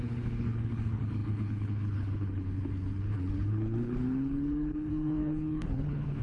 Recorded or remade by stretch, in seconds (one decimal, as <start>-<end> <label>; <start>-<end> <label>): 0.0-6.2 remade